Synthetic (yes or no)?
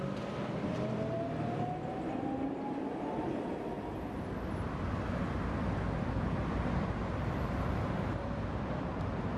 no